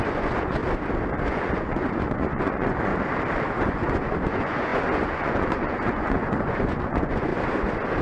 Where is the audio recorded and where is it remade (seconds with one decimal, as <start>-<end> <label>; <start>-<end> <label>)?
0.0-0.6 remade; 0.6-1.2 recorded; 1.2-2.9 remade; 2.9-3.6 recorded; 3.6-7.3 remade; 7.3-8.0 recorded

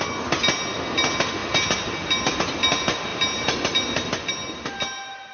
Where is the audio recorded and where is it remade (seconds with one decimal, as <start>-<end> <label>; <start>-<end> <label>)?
0.0-5.3 recorded

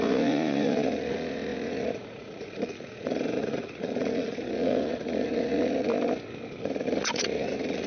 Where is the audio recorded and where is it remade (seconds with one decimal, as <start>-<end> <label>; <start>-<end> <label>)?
0.0-5.9 remade; 5.9-6.6 recorded; 6.6-7.9 remade

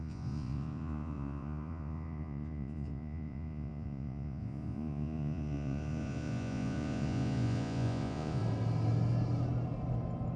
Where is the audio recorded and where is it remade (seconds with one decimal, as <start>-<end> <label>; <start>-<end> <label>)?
0.0-8.4 remade; 8.4-10.4 recorded